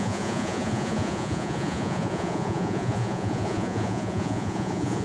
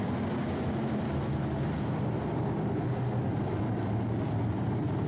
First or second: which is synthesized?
first